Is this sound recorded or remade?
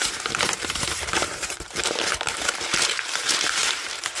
remade